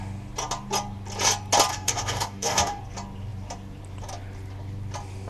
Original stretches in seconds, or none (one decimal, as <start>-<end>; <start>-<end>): 0.0-1.7; 2.8-5.3